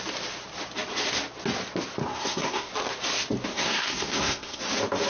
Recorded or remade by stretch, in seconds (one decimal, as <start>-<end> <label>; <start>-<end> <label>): 0.0-2.0 recorded; 2.0-2.7 remade; 2.7-3.5 recorded; 3.5-4.6 remade; 4.6-5.1 recorded